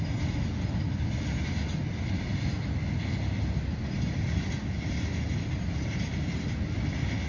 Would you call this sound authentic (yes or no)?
yes